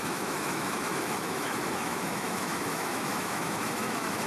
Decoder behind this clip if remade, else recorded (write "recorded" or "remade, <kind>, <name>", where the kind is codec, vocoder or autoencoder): remade, autoencoder, DAC-VAE